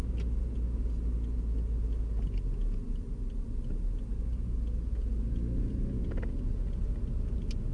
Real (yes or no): yes